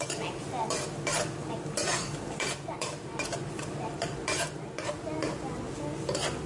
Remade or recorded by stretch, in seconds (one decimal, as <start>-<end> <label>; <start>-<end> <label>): 0.0-1.8 recorded; 1.8-5.7 remade; 5.7-6.5 recorded